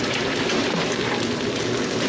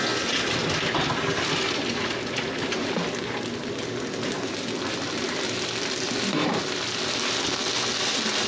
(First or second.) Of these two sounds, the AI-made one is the first